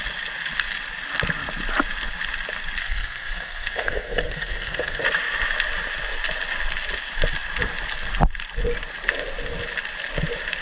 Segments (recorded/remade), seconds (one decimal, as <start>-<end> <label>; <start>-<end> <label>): 0.0-2.8 recorded; 2.8-5.0 remade; 5.0-10.6 recorded